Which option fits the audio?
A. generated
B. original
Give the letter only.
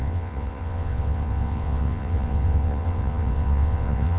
A